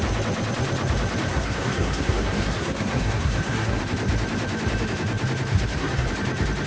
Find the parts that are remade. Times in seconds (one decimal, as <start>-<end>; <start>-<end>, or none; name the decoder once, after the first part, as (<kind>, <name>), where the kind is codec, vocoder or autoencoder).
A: 1.3-3.8 (codec, SNAC); 5.5-6.1